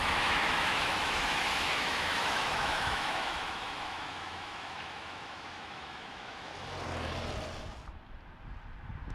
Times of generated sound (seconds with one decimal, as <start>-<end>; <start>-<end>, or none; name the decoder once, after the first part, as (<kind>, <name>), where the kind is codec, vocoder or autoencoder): 0.0-6.5 (autoencoder, DAC-VAE)